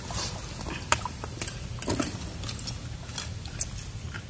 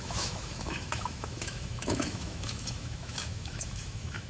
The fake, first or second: second